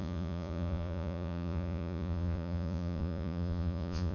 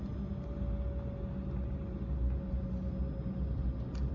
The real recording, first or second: second